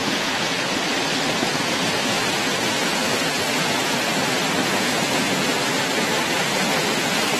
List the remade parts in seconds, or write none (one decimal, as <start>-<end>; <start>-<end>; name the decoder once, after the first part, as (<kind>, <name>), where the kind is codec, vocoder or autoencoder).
0.0-0.8 (vocoder, Vocos); 1.4-3.9; 4.6-5.5